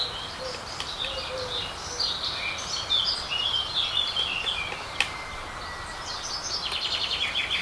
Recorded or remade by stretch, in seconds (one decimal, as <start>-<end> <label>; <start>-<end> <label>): 0.0-7.6 recorded